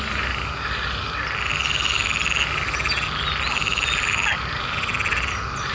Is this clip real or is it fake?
real